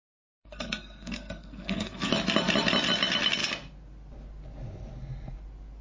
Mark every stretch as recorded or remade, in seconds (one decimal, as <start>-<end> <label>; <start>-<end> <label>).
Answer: 0.0-0.4 recorded; 0.4-2.1 remade; 2.1-5.8 recorded